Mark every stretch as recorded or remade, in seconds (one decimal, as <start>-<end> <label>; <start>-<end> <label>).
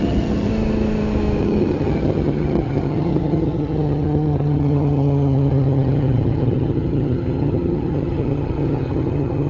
0.0-0.5 remade; 0.5-1.4 recorded; 1.4-9.5 remade